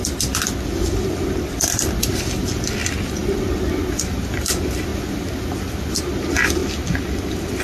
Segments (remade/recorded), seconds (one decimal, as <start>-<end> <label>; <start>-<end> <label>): 0.0-6.6 remade; 6.6-7.6 recorded